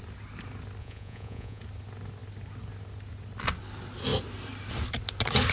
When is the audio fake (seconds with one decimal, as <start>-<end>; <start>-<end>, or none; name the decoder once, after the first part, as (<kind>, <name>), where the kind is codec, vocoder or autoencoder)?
0.8-1.6 (vocoder, Vocos)